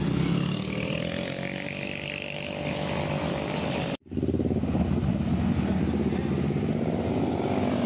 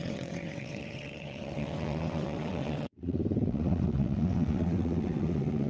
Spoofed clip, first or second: second